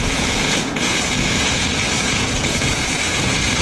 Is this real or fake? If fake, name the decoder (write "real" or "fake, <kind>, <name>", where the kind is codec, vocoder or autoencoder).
fake, vocoder, Vocos